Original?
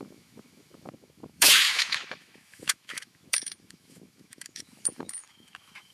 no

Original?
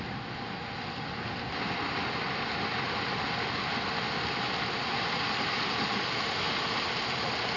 yes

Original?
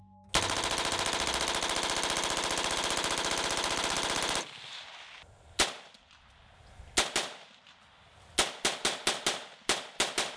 yes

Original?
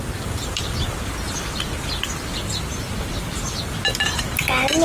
yes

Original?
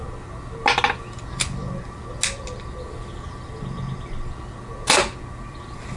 yes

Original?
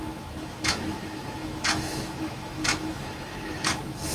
no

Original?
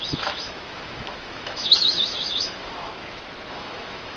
no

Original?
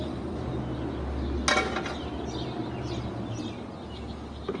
yes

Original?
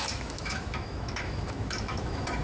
no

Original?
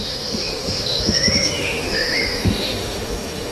no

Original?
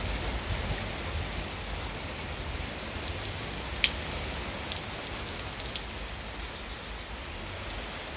yes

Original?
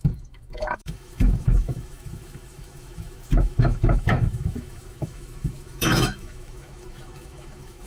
no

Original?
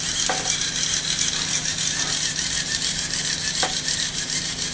yes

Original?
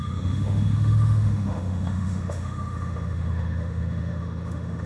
no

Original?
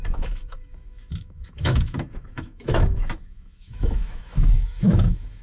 no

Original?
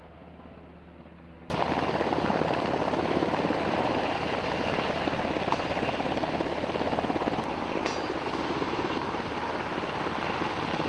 yes